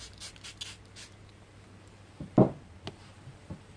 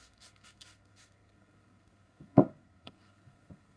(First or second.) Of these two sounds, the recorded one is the first